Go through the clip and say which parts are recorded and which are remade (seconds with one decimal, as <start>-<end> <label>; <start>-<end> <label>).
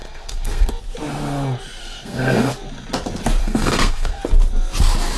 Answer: 0.0-0.7 remade; 0.7-1.8 recorded; 1.8-2.5 remade; 2.5-3.4 recorded; 3.4-4.2 remade; 4.2-5.2 recorded